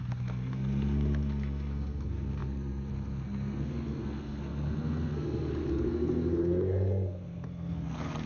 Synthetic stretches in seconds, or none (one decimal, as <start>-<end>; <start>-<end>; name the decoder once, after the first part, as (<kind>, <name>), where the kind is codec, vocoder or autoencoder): 0.0-8.3 (codec, SNAC)